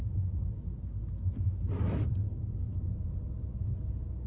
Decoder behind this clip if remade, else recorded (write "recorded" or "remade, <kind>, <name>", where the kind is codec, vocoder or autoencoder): recorded